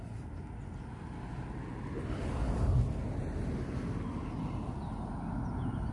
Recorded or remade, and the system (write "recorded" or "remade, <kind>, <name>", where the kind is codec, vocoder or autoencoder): recorded